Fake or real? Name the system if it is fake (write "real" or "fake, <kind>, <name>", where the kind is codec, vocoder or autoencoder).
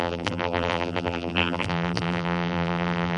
fake, vocoder, BigVGAN v2